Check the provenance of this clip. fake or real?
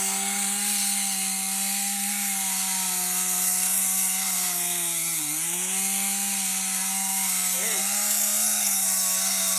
fake